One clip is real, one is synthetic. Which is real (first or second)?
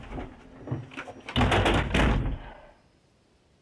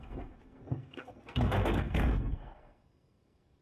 first